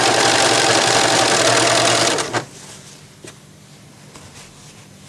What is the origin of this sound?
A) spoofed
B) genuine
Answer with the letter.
B